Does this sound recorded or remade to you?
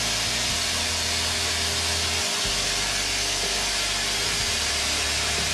recorded